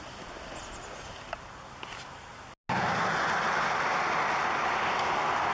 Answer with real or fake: real